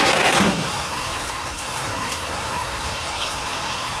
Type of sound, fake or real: fake